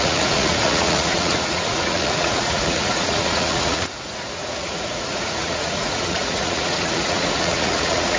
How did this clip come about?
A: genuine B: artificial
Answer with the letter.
B